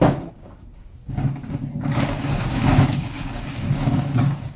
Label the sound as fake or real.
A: fake